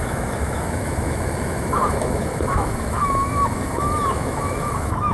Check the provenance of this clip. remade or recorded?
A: remade